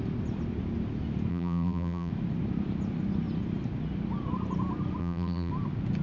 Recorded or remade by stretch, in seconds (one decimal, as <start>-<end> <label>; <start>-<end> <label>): 0.0-1.3 recorded; 1.3-2.1 remade; 2.1-5.0 recorded; 5.0-5.5 remade; 5.5-6.0 recorded